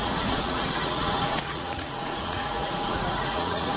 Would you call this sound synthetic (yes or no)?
yes